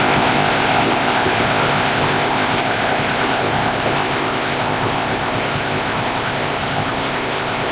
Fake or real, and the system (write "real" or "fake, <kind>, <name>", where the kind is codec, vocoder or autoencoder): fake, codec, ZipCodec